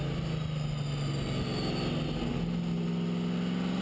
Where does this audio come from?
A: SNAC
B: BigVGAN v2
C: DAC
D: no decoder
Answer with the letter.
D